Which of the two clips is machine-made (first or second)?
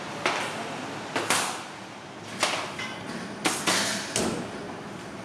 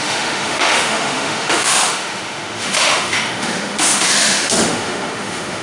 second